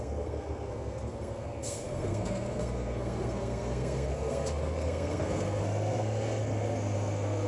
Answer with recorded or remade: remade